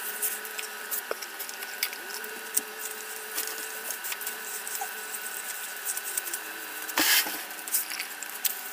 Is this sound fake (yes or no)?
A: yes